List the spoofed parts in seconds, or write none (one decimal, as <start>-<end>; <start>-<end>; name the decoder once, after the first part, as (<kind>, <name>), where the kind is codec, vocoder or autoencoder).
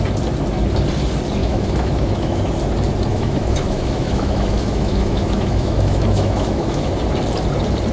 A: 1.4-2.4 (autoencoder, DAC-VAE); 3.1-6.9